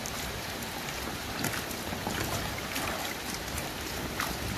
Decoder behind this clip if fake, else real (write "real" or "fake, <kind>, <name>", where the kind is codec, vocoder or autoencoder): real